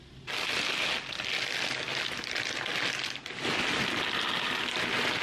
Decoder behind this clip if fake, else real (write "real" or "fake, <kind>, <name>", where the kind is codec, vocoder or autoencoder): real